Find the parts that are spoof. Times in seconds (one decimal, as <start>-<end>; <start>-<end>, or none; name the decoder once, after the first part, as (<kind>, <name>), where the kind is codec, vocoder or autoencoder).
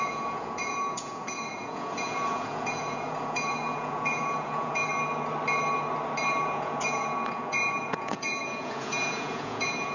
0.0-4.8 (vocoder, Vocos); 6.4-9.9